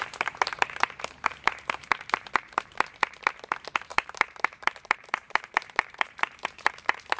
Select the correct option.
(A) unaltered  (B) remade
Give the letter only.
B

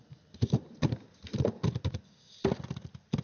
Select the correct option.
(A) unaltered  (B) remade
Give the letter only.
A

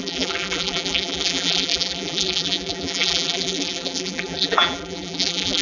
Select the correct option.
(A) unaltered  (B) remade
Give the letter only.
B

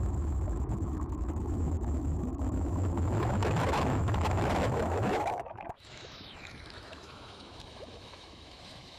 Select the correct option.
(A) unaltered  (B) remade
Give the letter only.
B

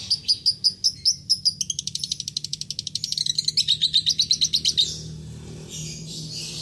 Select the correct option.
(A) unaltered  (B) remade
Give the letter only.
A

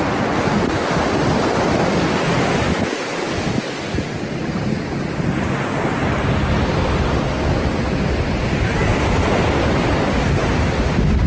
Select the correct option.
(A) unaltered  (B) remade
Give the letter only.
A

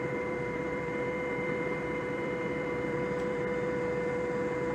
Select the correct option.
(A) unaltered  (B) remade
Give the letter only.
B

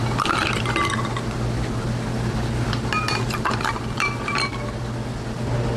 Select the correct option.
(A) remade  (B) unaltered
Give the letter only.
B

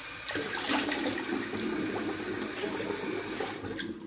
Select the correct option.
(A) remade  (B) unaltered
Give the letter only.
B